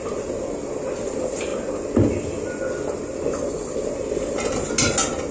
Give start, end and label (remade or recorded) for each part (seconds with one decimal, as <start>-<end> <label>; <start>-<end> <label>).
0.0-5.3 recorded